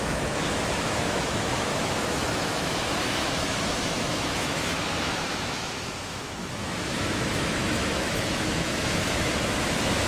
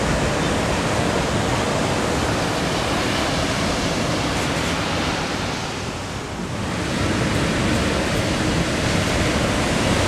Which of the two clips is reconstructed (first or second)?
first